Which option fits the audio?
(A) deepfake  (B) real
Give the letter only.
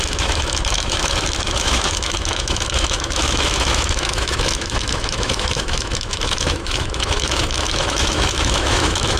A